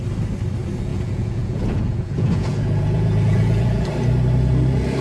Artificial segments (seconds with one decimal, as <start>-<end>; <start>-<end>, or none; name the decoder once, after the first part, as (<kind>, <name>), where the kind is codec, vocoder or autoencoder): 0.9-3.9 (vocoder, Vocos)